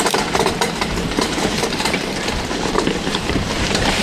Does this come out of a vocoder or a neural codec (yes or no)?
yes